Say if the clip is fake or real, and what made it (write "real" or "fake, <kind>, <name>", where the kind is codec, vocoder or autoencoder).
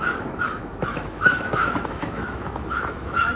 fake, autoencoder, DAC-VAE